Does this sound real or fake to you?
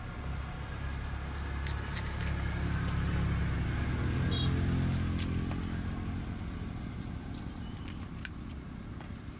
real